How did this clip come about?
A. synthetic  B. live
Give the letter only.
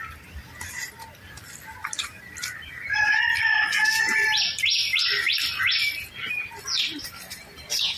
B